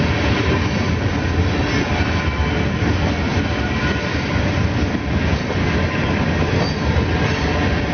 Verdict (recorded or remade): recorded